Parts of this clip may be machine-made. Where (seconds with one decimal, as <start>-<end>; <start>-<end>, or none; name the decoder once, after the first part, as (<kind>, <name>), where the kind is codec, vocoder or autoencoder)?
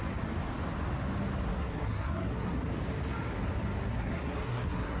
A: 1.5-2.7 (codec, SNAC); 3.9-5.0